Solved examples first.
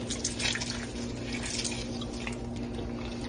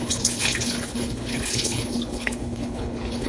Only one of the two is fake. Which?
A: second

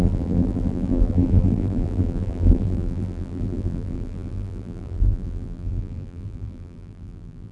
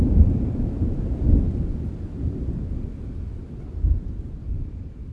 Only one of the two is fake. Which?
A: first